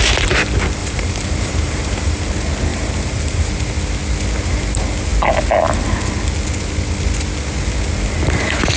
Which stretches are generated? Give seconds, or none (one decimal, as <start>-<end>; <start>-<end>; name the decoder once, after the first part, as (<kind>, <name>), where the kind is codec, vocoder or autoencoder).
0.8-2.2 (vocoder, BigVGAN v2); 2.7-3.5